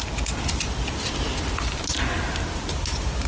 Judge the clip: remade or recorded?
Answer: recorded